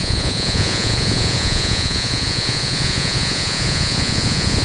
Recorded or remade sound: remade